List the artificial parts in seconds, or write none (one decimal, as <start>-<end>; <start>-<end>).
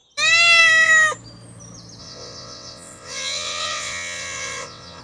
2.0-5.0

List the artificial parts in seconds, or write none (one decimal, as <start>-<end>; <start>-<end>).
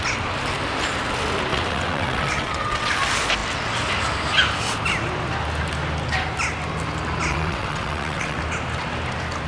1.5-2.9; 7.3-8.4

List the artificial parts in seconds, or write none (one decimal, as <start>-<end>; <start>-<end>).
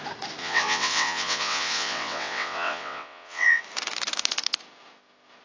0.4-3.6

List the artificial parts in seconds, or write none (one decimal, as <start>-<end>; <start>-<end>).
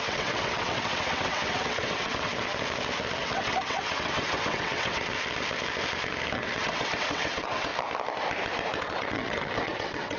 0.0-2.3; 3.2-5.1; 6.4-7.7; 8.8-10.2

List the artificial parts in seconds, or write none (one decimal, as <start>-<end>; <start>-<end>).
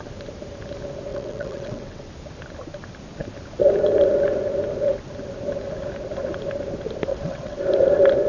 1.1-2.1; 7.1-7.6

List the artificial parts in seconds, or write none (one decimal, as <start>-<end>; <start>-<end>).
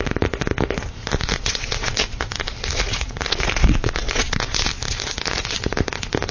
1.3-2.0; 3.3-4.7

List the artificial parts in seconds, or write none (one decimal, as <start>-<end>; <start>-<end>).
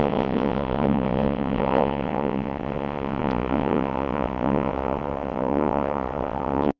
0.0-6.8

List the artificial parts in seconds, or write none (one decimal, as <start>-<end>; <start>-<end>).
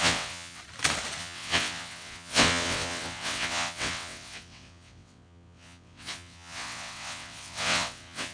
0.0-0.6; 1.2-8.3